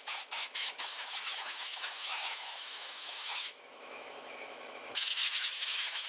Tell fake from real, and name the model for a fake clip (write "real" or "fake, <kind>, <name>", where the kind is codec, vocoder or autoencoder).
fake, autoencoder, DAC-VAE